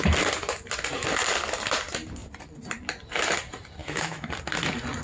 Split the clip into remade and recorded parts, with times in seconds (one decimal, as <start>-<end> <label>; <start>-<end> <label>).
0.0-3.8 recorded; 3.8-4.3 remade; 4.3-5.0 recorded